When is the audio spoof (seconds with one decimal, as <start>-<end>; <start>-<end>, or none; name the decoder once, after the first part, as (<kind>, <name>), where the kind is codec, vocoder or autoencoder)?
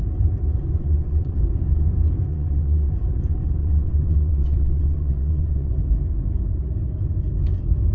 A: 0.8-1.4 (vocoder, WaveNeXt); 2.3-2.9; 3.6-5.7